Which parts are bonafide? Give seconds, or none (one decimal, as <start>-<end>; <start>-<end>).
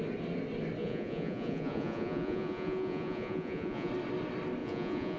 0.0-0.8; 3.9-4.6